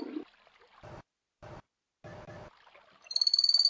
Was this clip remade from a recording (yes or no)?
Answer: no